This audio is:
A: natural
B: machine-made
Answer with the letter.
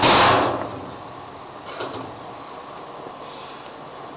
A